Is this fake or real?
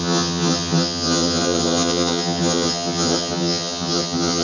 fake